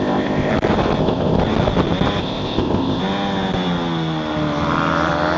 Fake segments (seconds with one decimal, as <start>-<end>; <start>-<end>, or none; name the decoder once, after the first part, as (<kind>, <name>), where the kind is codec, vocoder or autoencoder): 0.0-0.5 (codec, ZipCodec); 1.0-1.4; 2.2-3.0

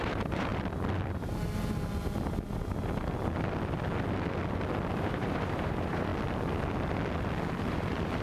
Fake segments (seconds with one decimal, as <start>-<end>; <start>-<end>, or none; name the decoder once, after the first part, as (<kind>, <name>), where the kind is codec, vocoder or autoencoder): 0.0-0.5 (vocoder, BigVGAN v2); 5.0-6.1; 7.5-8.2